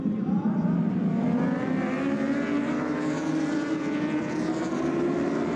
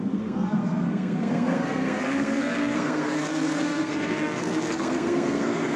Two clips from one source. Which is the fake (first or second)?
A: second